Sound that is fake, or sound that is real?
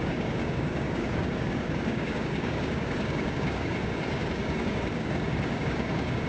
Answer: fake